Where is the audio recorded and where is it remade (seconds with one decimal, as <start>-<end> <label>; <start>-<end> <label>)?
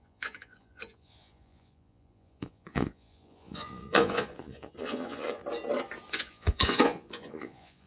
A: 0.0-5.4 remade; 5.4-6.1 recorded; 6.1-7.9 remade